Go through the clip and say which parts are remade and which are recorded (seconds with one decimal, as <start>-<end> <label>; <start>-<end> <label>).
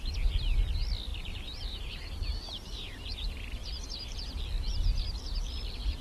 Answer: 0.0-1.1 recorded; 1.1-4.4 remade; 4.4-6.0 recorded